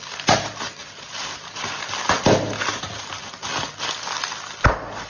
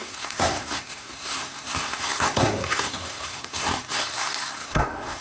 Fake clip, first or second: second